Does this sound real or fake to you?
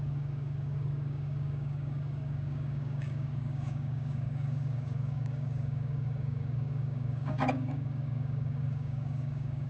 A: fake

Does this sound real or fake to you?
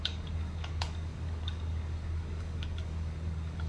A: fake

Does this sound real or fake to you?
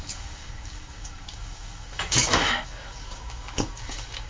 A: fake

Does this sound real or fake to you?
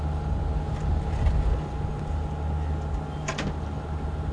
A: real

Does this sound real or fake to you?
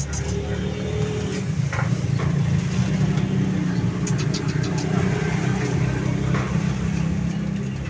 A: real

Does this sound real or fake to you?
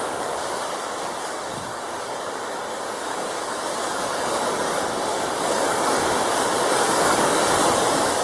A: fake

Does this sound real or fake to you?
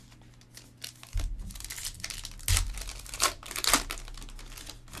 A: real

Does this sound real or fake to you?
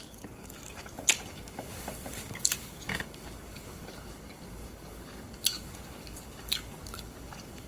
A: fake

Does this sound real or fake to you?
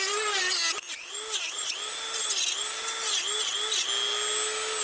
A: real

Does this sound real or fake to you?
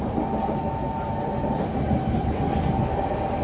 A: real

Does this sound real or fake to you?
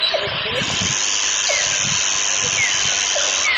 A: real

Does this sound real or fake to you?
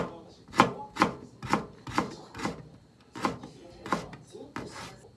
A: real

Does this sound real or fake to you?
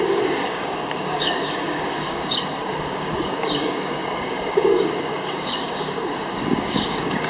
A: fake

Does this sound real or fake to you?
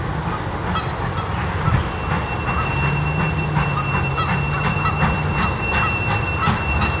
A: real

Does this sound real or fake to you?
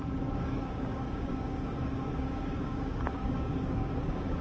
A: fake